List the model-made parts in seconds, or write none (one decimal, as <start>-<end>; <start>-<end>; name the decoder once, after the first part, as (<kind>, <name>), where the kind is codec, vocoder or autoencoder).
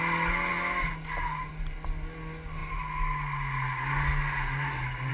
none